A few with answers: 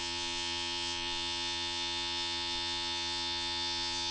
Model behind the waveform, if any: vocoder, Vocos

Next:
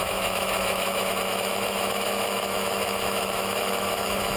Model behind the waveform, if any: autoencoder, DAC-VAE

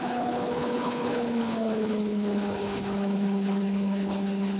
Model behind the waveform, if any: codec, HILCodec